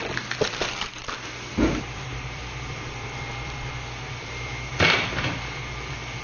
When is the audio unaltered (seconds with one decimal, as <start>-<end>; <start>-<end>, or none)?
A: none